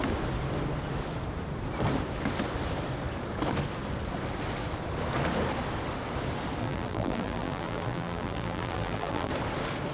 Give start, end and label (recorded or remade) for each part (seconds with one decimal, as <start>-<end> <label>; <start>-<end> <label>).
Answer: 0.0-6.6 recorded; 6.6-9.3 remade; 9.3-9.9 recorded